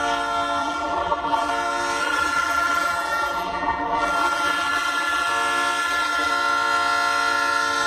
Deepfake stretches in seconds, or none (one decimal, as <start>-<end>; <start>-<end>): 0.6-1.5; 2.0-5.3; 5.8-6.3